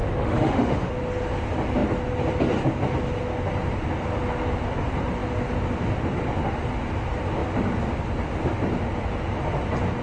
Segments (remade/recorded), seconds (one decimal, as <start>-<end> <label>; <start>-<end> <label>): 0.0-0.9 remade; 0.9-10.0 recorded